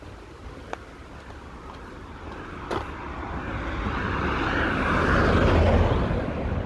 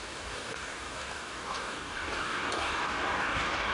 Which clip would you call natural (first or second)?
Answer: first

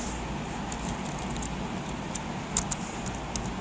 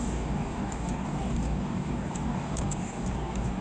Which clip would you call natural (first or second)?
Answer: first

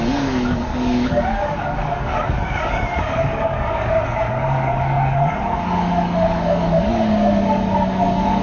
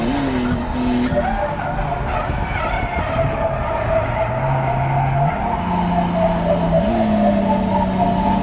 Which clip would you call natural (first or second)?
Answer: second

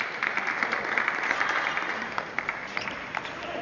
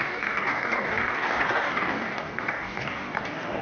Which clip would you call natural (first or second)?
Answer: first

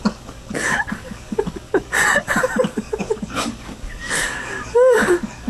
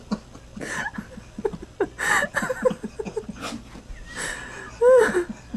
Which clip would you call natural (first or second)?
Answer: second